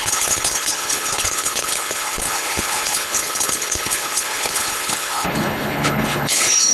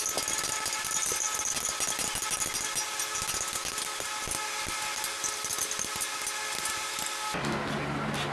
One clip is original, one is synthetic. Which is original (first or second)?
second